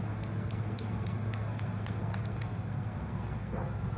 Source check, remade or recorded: remade